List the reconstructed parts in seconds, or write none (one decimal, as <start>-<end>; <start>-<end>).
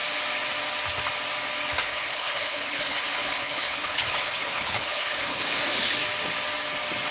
1.8-5.9